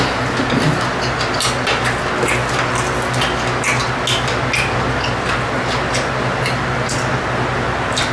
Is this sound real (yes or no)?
yes